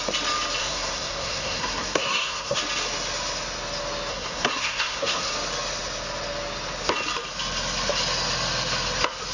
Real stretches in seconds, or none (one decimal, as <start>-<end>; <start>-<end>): 0.0-0.6; 2.6-4.1; 5.3-9.3